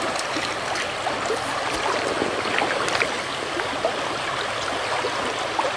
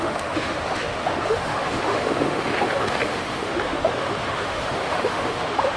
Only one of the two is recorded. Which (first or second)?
first